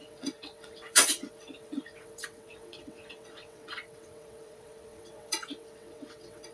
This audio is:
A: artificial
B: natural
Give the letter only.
A